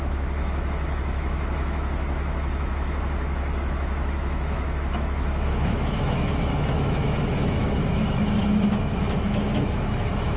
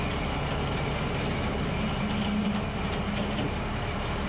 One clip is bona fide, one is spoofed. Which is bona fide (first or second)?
second